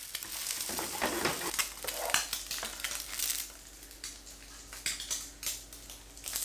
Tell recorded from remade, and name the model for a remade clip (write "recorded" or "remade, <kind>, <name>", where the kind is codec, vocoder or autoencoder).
recorded